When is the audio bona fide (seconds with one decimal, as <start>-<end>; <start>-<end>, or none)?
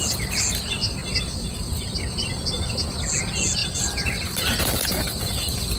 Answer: 0.0-3.6; 5.2-5.8